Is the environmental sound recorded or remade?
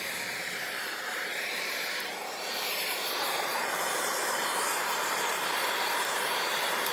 remade